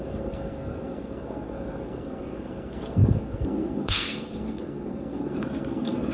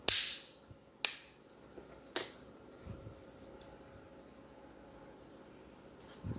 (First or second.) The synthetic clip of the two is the first